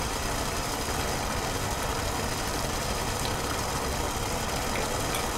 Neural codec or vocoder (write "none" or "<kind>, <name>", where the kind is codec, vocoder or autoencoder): none